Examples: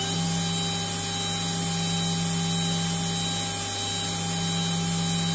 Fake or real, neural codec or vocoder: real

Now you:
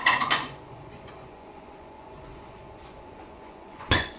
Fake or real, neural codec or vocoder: fake, vocoder, Vocos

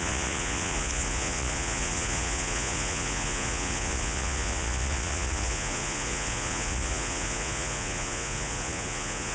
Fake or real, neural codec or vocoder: fake, vocoder, Vocos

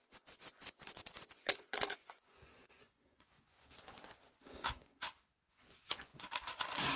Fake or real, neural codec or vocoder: fake, vocoder, Vocos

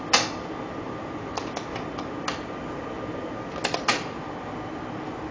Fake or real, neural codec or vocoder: real